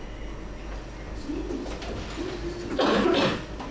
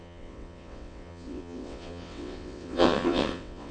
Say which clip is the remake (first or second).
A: second